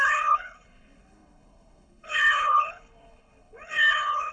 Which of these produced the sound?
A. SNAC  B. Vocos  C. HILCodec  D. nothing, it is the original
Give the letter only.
C